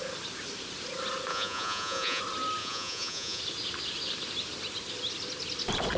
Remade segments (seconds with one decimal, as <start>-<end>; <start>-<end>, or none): 1.3-2.2; 2.6-3.4